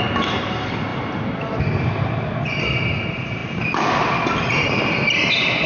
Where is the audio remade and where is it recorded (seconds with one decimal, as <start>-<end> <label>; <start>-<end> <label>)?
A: 0.0-5.7 recorded